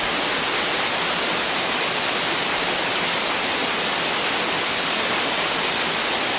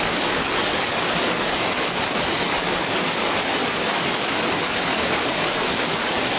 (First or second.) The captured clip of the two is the first